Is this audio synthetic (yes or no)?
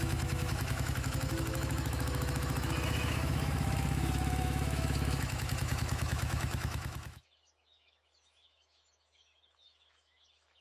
yes